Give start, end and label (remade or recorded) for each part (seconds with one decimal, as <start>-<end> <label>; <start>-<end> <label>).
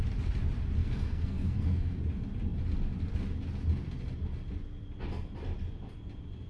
0.0-0.8 recorded; 0.8-2.0 remade; 2.0-6.5 recorded